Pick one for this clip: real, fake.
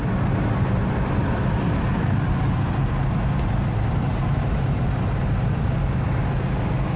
real